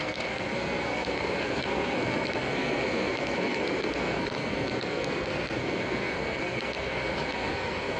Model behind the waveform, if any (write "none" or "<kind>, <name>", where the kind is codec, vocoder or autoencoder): codec, SNAC